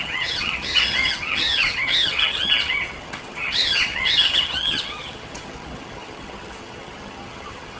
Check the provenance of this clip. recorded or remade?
remade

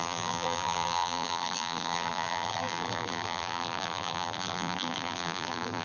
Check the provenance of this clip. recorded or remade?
remade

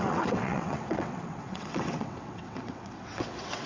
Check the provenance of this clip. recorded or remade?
remade